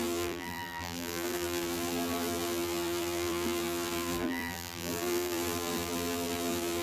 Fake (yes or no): yes